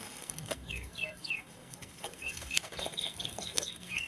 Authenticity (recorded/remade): remade